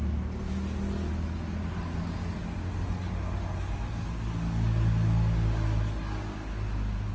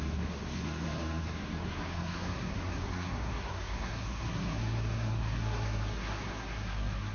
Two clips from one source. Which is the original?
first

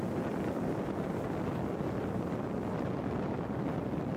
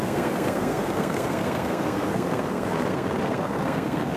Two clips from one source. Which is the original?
first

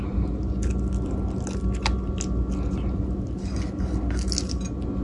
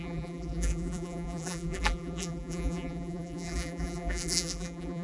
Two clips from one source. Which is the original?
first